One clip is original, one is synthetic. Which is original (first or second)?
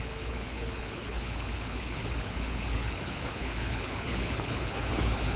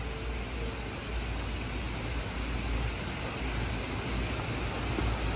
second